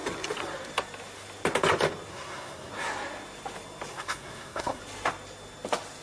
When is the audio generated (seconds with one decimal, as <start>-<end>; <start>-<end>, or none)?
2.1-2.7; 3.9-4.8